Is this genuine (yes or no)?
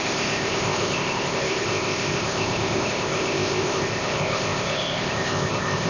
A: no